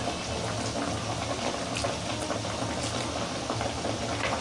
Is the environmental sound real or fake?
real